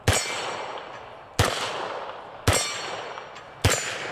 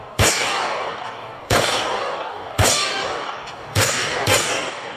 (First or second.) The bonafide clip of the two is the first